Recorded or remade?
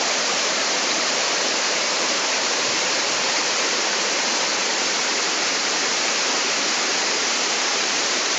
remade